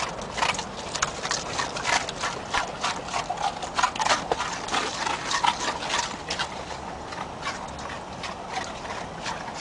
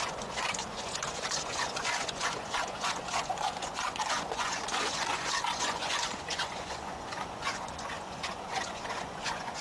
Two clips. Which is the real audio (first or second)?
first